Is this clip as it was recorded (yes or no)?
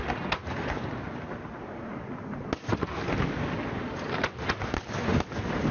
yes